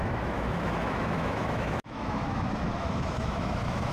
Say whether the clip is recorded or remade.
remade